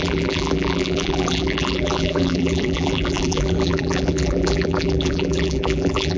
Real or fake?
fake